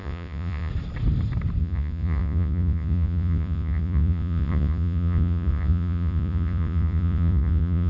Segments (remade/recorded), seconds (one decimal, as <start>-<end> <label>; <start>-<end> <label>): 0.0-0.7 remade; 0.7-1.6 recorded; 1.6-7.9 remade

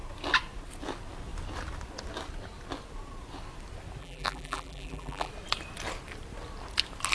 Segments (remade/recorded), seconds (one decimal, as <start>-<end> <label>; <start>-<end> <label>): 0.0-4.0 recorded; 4.0-5.3 remade; 5.3-7.1 recorded

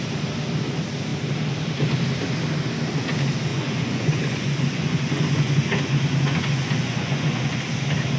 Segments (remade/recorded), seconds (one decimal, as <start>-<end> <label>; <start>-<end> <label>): 0.0-3.5 recorded; 3.5-7.6 remade; 7.6-8.2 recorded

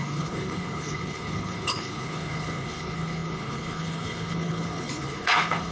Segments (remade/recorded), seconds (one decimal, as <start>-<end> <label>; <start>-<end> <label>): 0.0-5.7 remade

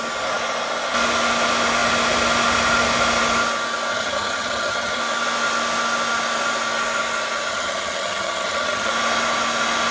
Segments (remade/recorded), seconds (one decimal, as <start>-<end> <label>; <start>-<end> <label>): 0.0-3.9 recorded; 3.9-5.0 remade; 5.0-7.5 recorded; 7.5-8.9 remade; 8.9-9.9 recorded

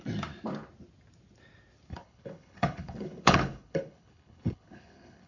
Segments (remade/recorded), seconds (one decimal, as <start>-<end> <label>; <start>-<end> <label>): 0.0-1.9 recorded; 1.9-5.3 remade

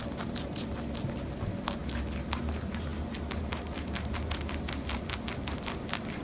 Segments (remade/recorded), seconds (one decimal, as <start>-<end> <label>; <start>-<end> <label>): 0.0-6.2 recorded